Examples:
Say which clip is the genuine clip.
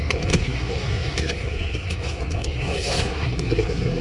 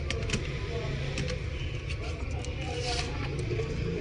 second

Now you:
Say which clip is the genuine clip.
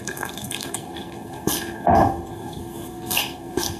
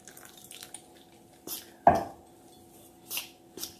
second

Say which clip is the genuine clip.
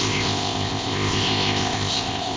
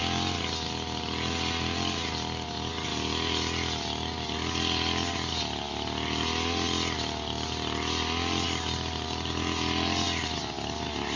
second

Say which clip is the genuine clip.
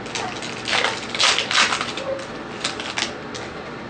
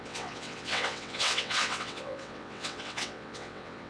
first